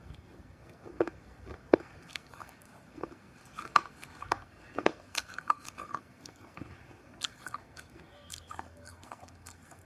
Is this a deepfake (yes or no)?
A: yes